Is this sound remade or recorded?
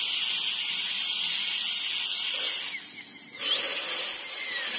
recorded